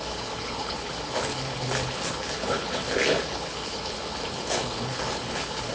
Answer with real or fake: fake